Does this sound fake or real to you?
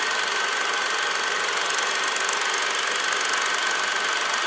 real